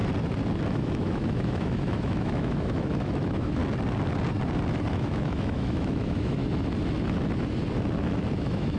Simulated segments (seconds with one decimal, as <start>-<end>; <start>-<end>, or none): 0.6-3.6; 4.9-6.4; 8.4-8.8